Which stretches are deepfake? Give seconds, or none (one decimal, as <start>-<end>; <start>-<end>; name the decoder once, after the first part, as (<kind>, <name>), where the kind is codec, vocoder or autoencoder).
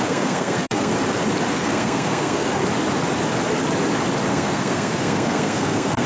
0.0-0.9 (codec, SNAC); 1.5-2.6; 4.3-6.1